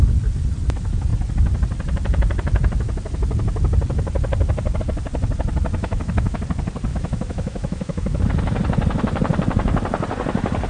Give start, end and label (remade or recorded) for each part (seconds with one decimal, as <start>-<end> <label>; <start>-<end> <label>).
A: 0.0-5.8 recorded; 5.8-6.4 remade; 6.4-6.9 recorded; 6.9-8.2 remade; 8.2-10.7 recorded